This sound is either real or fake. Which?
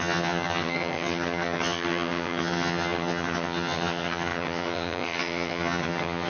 fake